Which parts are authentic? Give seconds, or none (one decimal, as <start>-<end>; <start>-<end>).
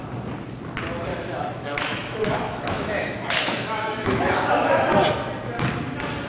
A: 0.0-1.1; 4.9-6.3